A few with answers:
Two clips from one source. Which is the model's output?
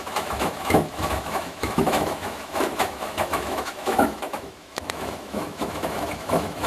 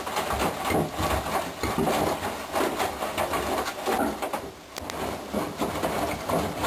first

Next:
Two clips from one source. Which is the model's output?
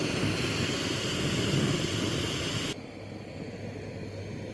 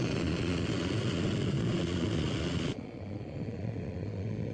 second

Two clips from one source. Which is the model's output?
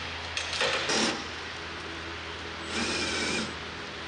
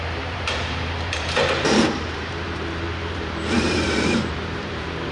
second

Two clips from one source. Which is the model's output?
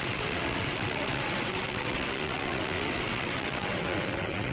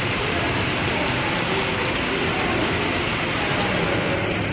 first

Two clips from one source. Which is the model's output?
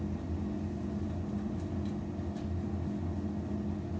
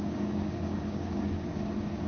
second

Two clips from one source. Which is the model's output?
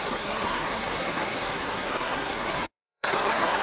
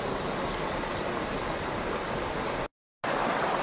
first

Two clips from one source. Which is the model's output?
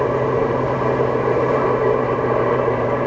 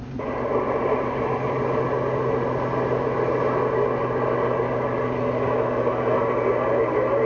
first